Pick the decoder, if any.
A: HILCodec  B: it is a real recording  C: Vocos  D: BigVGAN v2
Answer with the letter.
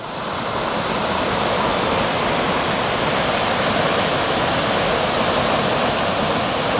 B